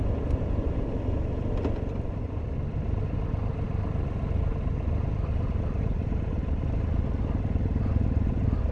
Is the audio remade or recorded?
recorded